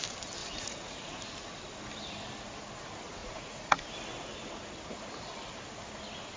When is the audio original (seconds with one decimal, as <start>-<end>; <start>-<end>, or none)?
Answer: 0.0-0.4; 1.2-3.2; 3.8-6.4